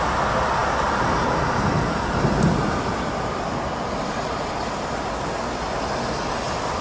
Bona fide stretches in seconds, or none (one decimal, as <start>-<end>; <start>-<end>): 0.0-6.8